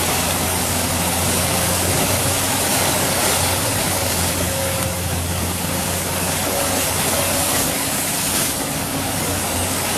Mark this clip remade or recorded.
remade